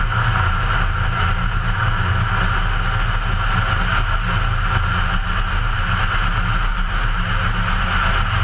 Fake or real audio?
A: real